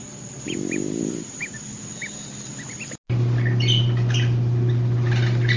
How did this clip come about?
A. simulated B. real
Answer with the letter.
B